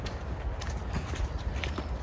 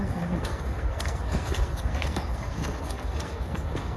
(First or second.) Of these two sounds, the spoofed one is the second